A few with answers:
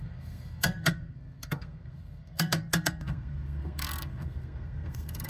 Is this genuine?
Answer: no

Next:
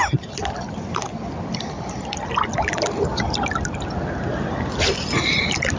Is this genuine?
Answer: yes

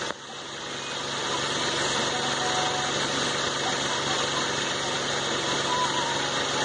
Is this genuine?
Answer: yes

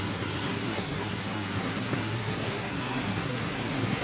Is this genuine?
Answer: no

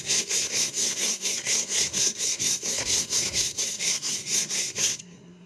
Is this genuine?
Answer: no